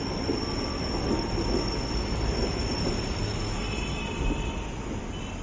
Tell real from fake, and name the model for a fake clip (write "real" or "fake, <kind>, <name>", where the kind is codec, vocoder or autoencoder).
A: real